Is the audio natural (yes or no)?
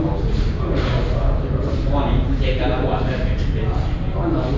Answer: yes